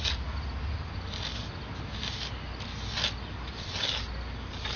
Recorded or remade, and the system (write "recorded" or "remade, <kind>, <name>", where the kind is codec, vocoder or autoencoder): recorded